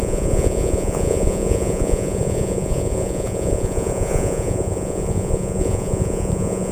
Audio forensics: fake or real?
fake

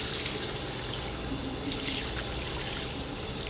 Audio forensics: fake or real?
real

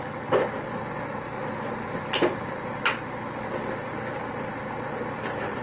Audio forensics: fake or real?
real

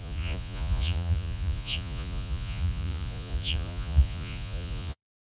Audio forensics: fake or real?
fake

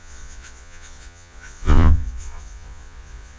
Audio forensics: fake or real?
fake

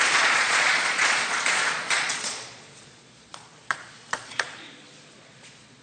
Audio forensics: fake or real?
fake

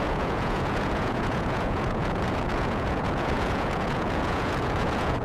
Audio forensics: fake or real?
fake